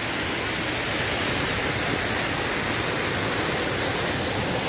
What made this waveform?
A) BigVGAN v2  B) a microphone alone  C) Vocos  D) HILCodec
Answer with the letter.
B